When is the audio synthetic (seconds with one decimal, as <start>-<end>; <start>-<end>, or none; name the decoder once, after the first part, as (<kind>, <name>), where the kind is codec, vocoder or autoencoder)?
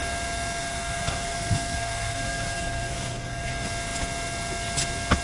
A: 0.6-3.5 (codec, SNAC)